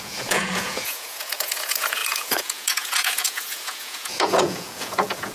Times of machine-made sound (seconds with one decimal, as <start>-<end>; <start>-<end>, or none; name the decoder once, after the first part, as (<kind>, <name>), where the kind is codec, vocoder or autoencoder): 0.0-5.3 (vocoder, Vocos)